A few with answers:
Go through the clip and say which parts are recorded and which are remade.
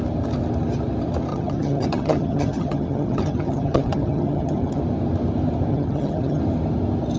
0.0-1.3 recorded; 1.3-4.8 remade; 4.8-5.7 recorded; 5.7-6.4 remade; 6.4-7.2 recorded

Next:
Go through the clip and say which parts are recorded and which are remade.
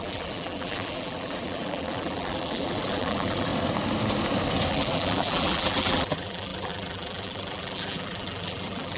0.0-3.5 remade; 3.5-4.7 recorded; 4.7-9.0 remade